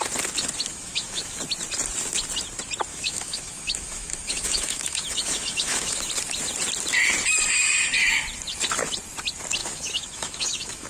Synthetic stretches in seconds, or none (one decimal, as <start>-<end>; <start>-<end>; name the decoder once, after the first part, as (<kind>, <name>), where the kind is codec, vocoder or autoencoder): 0.7-1.4 (autoencoder, DAC-VAE); 2.9-6.1; 9.6-10.9